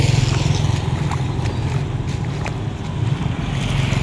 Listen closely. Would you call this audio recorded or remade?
recorded